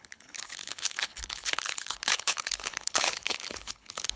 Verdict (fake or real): fake